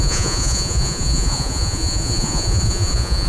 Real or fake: fake